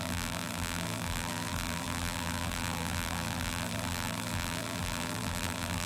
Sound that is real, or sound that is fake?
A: fake